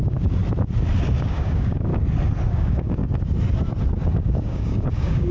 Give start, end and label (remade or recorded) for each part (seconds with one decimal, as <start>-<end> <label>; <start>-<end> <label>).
0.0-0.4 remade; 0.4-1.2 recorded; 1.2-1.9 remade; 1.9-2.5 recorded; 2.5-3.0 remade; 3.0-4.1 recorded; 4.1-5.3 remade